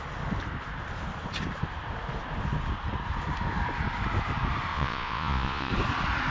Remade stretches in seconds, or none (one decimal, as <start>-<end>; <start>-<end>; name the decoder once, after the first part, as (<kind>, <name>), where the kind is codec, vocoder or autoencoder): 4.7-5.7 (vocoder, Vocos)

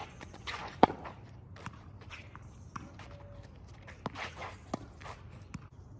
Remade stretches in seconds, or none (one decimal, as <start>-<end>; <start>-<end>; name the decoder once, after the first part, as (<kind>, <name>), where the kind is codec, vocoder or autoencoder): 0.0-0.9 (vocoder, Vocos)

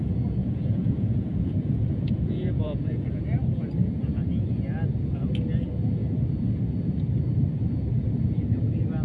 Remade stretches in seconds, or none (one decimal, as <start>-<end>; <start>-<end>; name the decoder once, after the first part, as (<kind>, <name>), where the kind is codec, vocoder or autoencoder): 0.4-3.2 (vocoder, Vocos)

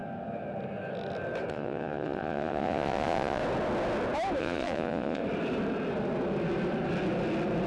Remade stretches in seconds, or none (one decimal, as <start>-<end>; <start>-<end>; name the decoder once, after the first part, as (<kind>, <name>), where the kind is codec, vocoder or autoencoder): 1.5-3.4 (vocoder, Vocos); 4.4-5.2

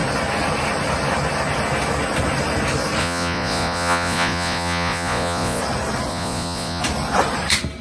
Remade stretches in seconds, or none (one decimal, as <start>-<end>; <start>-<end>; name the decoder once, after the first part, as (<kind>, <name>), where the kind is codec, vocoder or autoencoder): 3.0-5.6 (vocoder, Vocos); 6.1-6.8

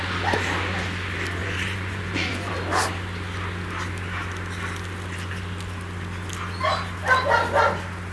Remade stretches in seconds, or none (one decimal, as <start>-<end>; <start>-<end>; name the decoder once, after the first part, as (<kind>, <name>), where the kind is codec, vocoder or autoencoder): 1.4-2.5 (vocoder, Vocos)

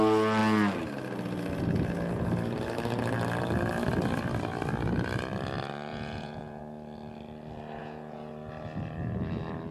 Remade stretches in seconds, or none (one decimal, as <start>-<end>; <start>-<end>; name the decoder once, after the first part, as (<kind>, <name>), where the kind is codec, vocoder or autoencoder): 5.9-6.6 (vocoder, Vocos); 7.8-8.3

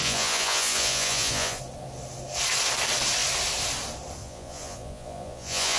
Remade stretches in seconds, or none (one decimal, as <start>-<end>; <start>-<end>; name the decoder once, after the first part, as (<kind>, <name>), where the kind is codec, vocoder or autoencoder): 0.0-1.6 (vocoder, Vocos); 4.2-5.8